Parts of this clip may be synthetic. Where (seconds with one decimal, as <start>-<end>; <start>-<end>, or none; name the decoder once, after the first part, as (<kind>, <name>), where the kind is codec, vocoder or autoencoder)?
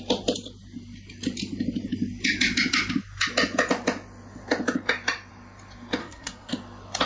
6.0-6.5 (codec, SNAC)